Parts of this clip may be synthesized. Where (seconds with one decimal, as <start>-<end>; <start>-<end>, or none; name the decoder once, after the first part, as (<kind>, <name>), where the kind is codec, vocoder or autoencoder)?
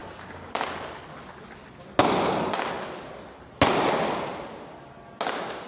0.0-0.8 (codec, DAC)